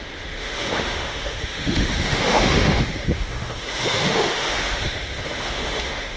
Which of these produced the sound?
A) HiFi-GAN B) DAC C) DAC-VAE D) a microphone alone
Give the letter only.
C